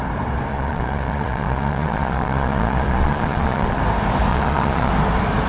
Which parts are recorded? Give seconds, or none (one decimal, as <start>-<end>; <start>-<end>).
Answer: 0.0-0.5; 3.8-4.3; 4.9-5.5